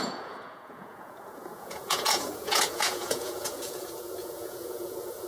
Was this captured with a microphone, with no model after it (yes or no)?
no